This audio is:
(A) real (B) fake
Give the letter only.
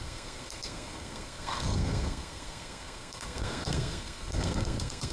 B